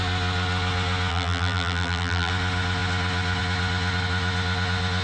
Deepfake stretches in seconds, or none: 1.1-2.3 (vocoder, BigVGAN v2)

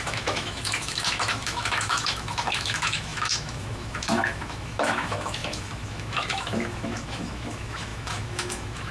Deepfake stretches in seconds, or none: 0.0-8.9 (autoencoder, DAC-VAE)

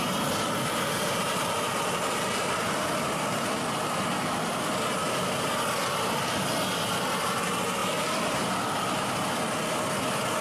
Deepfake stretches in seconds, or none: 0.0-10.4 (vocoder, BigVGAN v2)

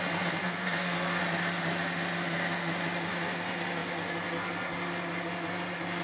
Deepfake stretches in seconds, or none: 0.4-1.2 (codec, SNAC)

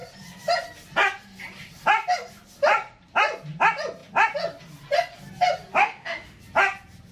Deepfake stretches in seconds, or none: 5.8-6.4 (autoencoder, DAC-VAE)